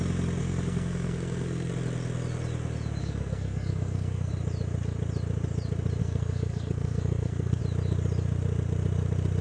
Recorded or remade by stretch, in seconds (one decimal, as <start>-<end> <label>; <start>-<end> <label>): 0.0-0.4 recorded; 0.4-1.7 remade; 1.7-3.0 recorded; 3.0-4.3 remade; 4.3-6.0 recorded; 6.0-7.6 remade; 7.6-9.4 recorded